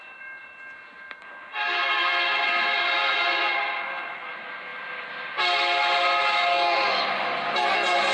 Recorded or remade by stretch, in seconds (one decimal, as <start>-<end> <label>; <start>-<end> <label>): 0.0-8.1 recorded